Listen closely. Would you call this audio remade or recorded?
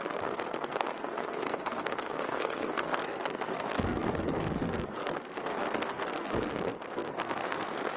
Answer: remade